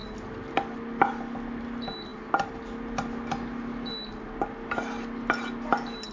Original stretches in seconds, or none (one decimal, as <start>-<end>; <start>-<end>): 0.0-6.1